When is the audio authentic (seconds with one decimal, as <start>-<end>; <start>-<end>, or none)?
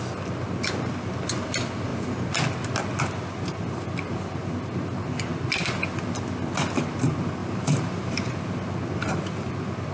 0.0-7.4; 8.3-9.0; 9.5-9.9